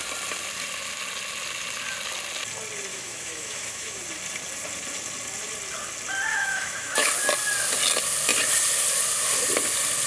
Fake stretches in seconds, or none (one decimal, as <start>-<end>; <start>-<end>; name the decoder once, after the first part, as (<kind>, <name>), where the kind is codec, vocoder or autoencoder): 2.9-4.0 (autoencoder, DAC-VAE); 6.3-7.1